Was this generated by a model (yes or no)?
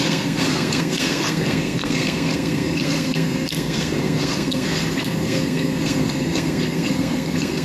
yes